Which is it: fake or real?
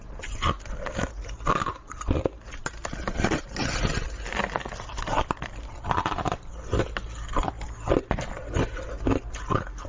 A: real